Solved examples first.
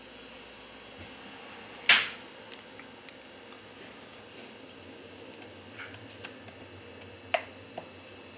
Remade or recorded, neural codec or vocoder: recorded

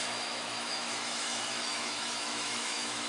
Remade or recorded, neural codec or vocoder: remade, autoencoder, DAC-VAE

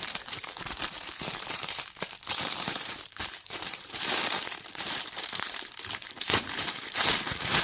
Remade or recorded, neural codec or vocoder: remade, vocoder, BigVGAN v2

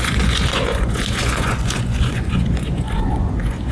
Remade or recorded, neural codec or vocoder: remade, vocoder, Vocos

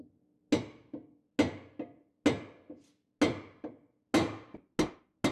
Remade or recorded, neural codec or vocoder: recorded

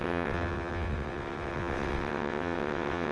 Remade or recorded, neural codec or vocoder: remade, vocoder, WaveNeXt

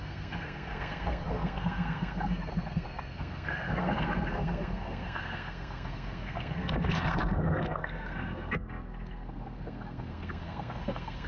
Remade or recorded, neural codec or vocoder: remade, codec, SNAC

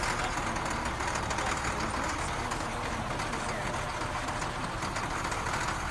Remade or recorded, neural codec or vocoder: recorded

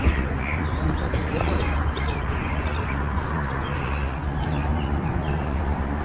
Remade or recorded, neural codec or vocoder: remade, vocoder, Vocos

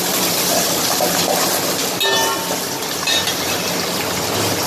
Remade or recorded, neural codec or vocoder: recorded